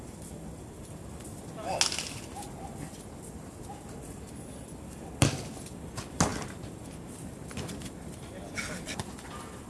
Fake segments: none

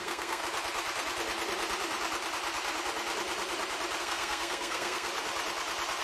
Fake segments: 0.0-0.4 (codec, SNAC); 4.0-5.1

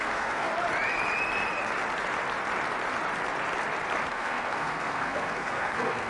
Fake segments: 0.0-0.5 (codec, SNAC); 4.1-6.1

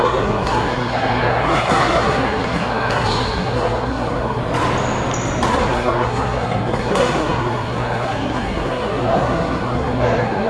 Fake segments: 0.0-4.4 (codec, SNAC); 5.5-10.5

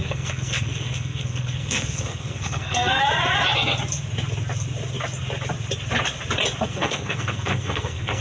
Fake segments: 0.0-3.0 (codec, SNAC); 6.6-8.2

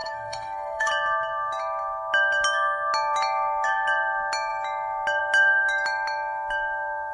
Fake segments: 0.0-0.9 (codec, SNAC)